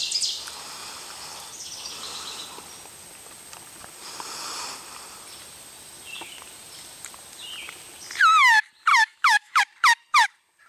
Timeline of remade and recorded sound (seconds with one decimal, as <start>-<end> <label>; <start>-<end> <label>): 0.0-8.9 recorded; 8.9-9.6 remade; 9.6-10.7 recorded